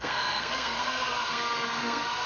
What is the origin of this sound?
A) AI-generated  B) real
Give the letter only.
A